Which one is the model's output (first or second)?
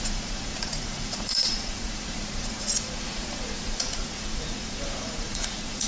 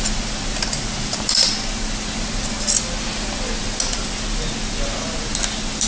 first